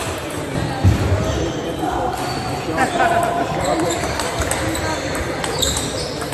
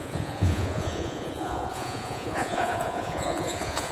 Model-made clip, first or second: second